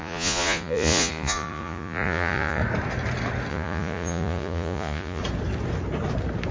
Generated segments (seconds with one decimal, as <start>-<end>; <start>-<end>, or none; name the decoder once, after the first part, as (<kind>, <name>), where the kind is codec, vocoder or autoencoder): 0.0-2.6 (vocoder, Vocos); 3.5-5.2

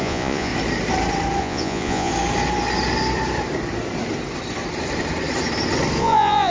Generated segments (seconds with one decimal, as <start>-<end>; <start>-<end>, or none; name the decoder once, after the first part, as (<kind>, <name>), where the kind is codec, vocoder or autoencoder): 0.0-0.5 (vocoder, Vocos); 1.4-2.1; 6.0-6.5